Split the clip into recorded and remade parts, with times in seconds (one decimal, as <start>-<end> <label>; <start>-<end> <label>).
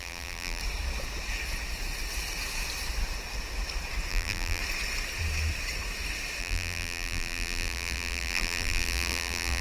0.0-0.6 remade; 0.6-4.1 recorded; 4.1-4.6 remade; 4.6-6.4 recorded; 6.4-9.6 remade